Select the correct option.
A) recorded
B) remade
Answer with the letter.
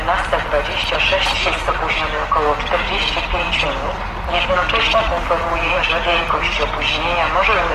A